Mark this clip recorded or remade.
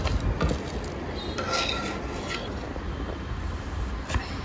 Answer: recorded